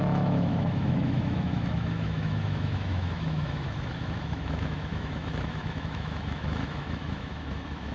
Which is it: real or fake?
fake